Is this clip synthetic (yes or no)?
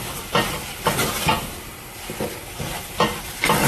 no